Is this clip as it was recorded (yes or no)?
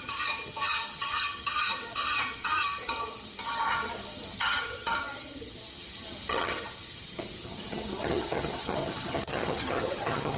no